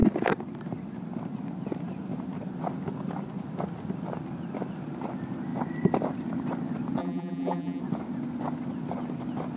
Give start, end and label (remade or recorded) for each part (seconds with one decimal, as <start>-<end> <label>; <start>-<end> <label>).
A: 0.0-7.0 recorded; 7.0-7.8 remade; 7.8-9.6 recorded